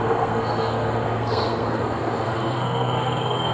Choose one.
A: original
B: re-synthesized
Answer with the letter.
B